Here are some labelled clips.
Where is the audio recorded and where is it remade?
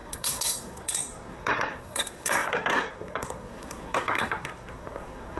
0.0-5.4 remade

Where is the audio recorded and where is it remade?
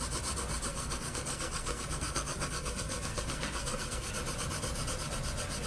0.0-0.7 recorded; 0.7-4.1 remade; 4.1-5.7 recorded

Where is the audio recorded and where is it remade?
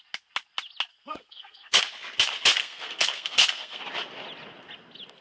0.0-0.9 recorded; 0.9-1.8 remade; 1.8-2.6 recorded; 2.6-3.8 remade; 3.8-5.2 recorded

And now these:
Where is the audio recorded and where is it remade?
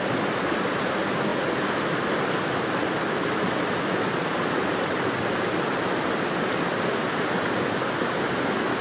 0.0-8.8 recorded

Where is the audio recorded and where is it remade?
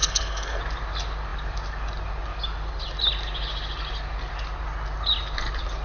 0.0-0.6 remade; 0.6-5.8 recorded